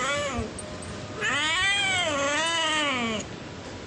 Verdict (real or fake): real